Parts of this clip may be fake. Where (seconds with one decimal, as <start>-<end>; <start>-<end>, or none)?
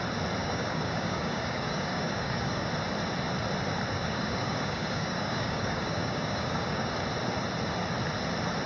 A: 0.4-2.7; 3.9-6.9